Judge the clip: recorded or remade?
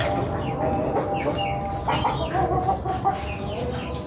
recorded